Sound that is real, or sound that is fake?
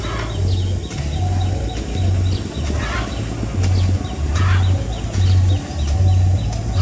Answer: real